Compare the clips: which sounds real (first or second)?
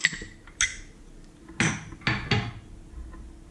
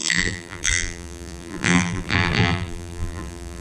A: first